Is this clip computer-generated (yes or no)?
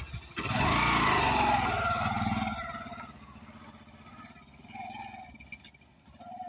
no